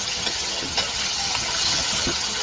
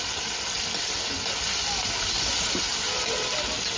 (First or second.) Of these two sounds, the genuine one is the second